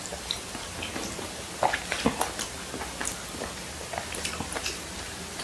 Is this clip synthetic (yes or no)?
yes